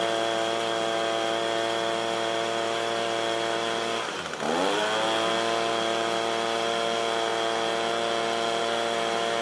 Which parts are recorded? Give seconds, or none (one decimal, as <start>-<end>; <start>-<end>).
4.8-5.7; 7.3-8.6